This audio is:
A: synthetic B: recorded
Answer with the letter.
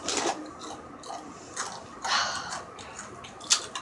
B